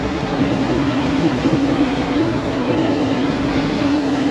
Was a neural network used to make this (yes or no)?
yes